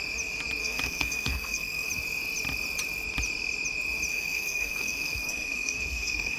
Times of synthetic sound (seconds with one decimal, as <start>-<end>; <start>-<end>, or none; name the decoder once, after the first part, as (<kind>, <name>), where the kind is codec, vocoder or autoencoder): 0.6-1.9 (codec, SNAC); 4.1-6.4

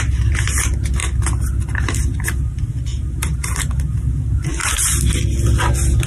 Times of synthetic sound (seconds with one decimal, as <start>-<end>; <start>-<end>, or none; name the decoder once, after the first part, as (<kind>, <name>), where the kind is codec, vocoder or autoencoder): 2.9-3.8 (vocoder, BigVGAN v2)